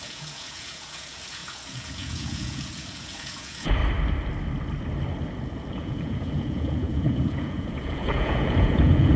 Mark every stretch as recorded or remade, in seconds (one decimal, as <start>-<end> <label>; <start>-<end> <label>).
0.0-3.8 remade; 3.8-5.7 recorded; 5.7-9.2 remade